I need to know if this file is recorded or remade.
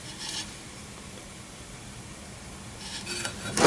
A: recorded